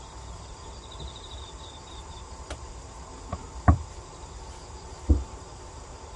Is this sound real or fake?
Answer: fake